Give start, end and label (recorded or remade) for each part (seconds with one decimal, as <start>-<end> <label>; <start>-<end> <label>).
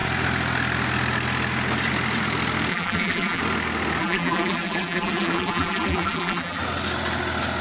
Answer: 0.0-2.7 recorded; 2.7-3.4 remade; 3.4-4.0 recorded; 4.0-6.6 remade; 6.6-7.6 recorded